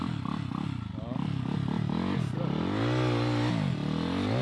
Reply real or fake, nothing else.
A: real